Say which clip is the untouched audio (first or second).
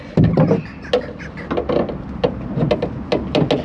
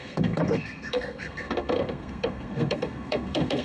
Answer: first